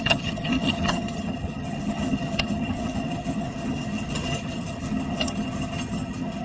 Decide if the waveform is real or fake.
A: fake